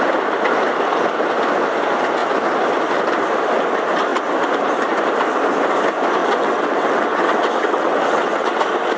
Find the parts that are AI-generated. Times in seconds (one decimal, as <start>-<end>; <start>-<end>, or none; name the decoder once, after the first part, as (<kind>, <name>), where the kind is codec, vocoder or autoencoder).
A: 6.2-8.6 (vocoder, WaveNeXt)